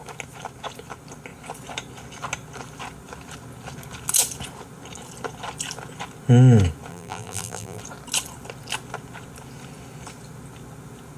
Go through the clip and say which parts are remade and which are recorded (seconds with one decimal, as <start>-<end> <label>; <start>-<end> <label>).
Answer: 0.0-6.9 recorded; 6.9-7.8 remade; 7.8-11.2 recorded